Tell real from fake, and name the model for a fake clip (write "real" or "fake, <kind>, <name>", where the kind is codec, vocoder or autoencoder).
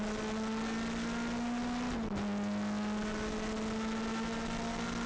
real